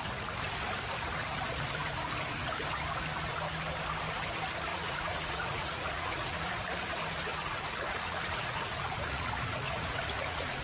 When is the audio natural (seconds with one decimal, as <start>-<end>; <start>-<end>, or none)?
0.0-4.7; 6.5-7.3